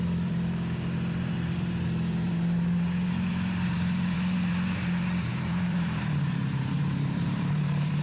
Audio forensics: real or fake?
fake